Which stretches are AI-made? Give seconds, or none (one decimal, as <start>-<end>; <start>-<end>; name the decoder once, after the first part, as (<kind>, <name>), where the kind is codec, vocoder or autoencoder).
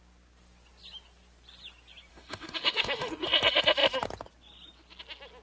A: 2.1-3.1 (autoencoder, DAC-VAE)